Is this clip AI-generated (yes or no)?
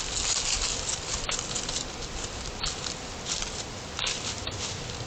no